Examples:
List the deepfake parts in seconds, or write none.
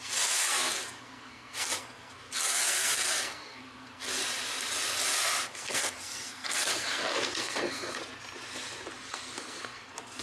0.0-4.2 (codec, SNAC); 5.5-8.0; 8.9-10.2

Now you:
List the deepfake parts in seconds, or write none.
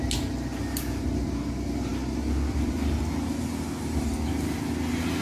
none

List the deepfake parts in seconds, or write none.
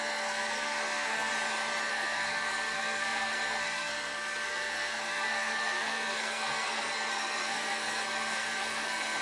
0.0-1.3 (codec, SNAC); 1.9-9.2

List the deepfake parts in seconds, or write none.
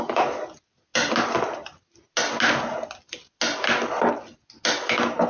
none